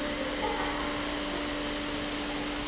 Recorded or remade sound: recorded